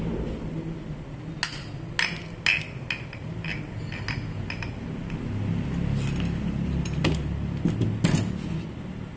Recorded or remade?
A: recorded